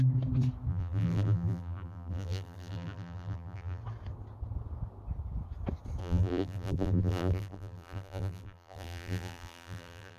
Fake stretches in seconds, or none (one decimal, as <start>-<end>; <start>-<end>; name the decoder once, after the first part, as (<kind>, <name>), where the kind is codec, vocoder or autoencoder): 0.7-3.8 (vocoder, BigVGAN v2); 6.0-10.2